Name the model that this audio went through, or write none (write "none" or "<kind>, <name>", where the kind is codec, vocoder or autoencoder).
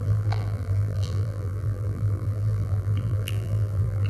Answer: vocoder, BigVGAN v2